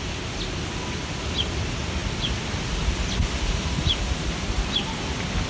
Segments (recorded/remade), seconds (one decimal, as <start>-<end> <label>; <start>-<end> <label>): 0.0-5.5 recorded